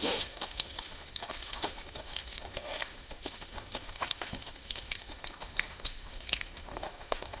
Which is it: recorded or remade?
remade